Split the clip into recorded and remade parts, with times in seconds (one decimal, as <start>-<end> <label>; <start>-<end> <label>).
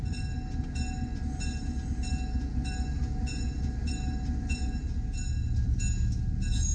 0.0-6.7 recorded